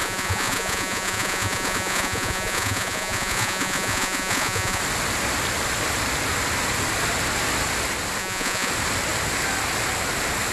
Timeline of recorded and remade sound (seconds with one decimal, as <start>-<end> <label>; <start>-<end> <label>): 0.0-4.8 remade; 4.8-8.2 recorded; 8.2-8.7 remade; 8.7-10.5 recorded

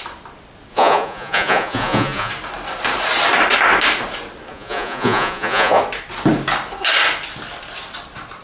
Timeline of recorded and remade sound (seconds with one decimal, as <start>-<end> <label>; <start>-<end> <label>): 0.0-0.7 recorded; 0.7-2.3 remade; 2.3-4.5 recorded; 4.5-5.8 remade; 5.8-8.4 recorded

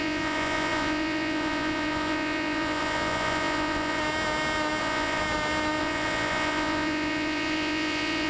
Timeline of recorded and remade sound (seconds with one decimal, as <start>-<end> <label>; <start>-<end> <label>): 0.0-4.0 remade; 4.0-4.8 recorded; 4.8-5.2 remade; 5.2-5.8 recorded; 5.8-8.3 remade

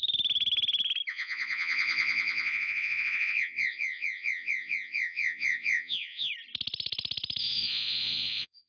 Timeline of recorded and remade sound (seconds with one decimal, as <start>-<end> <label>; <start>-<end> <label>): 0.0-1.1 recorded; 1.1-6.3 remade; 6.3-7.4 recorded; 7.4-8.7 remade

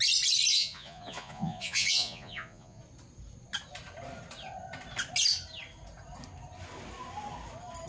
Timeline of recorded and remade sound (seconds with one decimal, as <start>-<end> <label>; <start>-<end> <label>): 0.0-0.5 recorded; 0.5-2.8 remade; 2.8-7.9 recorded